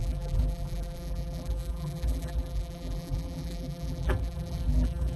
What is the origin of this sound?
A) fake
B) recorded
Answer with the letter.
A